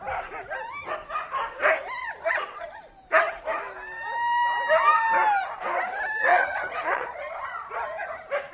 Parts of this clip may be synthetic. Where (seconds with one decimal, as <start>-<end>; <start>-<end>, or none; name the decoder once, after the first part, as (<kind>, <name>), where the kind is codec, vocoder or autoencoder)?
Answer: 2.0-2.8 (vocoder, Vocos); 6.3-8.1